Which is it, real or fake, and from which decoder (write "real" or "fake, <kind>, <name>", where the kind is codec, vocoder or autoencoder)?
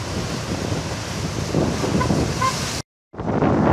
real